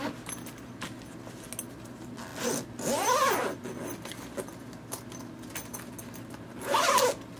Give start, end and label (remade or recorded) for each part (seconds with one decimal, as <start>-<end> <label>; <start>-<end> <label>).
0.0-7.4 recorded